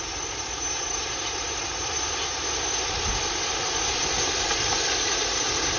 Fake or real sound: real